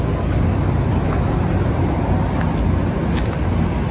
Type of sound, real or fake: real